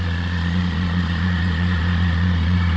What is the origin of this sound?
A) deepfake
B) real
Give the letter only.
A